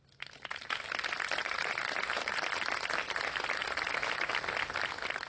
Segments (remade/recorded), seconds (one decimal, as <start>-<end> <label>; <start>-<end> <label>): 0.0-1.4 recorded; 1.4-2.3 remade; 2.3-5.3 recorded